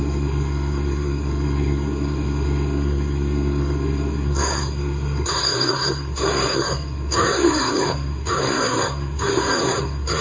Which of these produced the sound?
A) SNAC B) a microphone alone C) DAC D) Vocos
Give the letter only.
A